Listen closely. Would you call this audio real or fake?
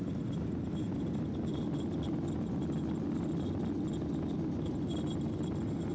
real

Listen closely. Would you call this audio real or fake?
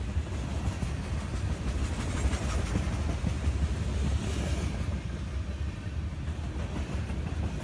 real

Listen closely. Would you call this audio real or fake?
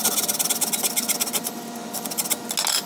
real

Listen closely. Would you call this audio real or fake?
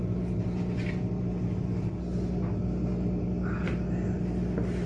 real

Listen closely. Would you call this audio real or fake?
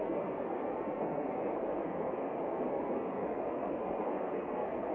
fake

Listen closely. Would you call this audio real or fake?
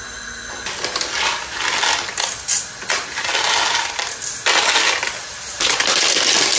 real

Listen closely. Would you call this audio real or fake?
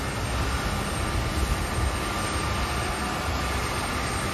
real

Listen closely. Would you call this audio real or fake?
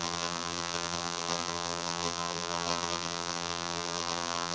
fake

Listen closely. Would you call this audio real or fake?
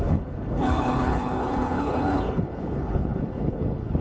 fake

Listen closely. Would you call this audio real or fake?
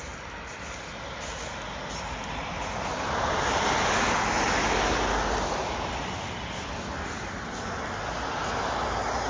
real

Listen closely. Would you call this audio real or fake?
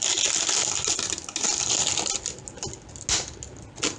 real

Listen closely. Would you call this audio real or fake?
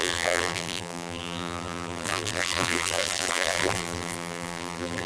fake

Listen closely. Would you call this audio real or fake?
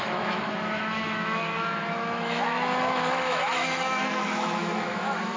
fake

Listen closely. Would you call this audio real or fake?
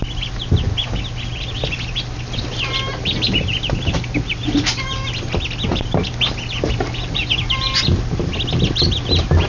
real